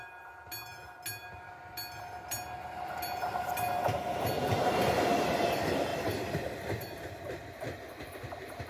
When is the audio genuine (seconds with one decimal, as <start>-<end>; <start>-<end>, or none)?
0.0-5.9; 8.1-8.7